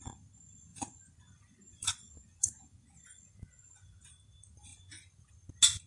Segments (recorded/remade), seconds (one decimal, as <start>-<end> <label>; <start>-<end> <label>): 0.0-0.7 recorded; 0.7-4.1 remade; 4.1-4.7 recorded; 4.7-5.3 remade; 5.3-5.9 recorded